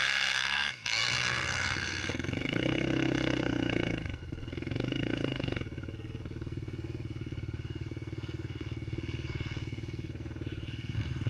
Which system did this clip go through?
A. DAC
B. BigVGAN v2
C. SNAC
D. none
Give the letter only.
C